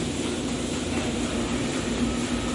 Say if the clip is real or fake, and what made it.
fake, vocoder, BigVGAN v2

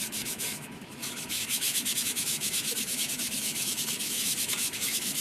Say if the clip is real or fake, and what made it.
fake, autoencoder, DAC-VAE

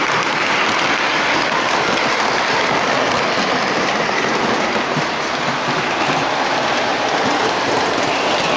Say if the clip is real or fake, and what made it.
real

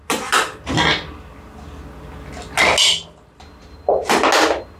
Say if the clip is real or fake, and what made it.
real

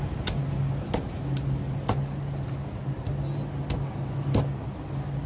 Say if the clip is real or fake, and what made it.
real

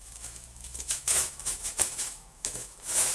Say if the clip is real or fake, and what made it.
fake, autoencoder, DAC-VAE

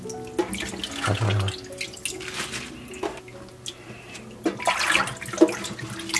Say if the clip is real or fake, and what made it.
real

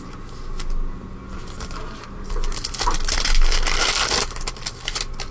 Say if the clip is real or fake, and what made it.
real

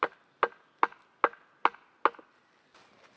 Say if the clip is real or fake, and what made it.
real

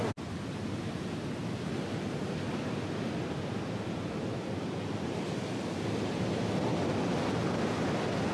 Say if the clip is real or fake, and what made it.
real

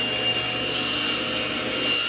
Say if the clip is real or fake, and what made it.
real